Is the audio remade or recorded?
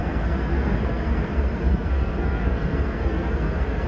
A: remade